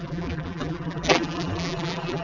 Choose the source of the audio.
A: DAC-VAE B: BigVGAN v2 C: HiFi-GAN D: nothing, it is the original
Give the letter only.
B